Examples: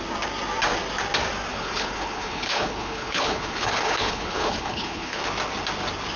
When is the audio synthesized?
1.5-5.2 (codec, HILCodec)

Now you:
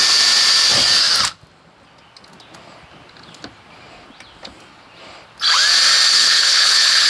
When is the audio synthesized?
6.1-7.1 (codec, HILCodec)